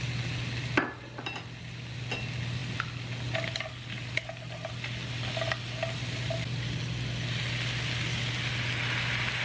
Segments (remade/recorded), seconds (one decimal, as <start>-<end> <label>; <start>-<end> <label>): 0.0-9.4 recorded